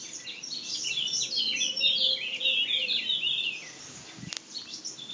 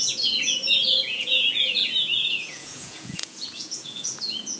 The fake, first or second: second